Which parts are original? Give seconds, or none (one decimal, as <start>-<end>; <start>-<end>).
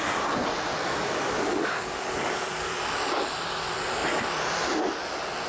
0.0-0.7; 2.8-5.5